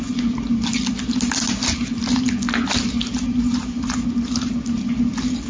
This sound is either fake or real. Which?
real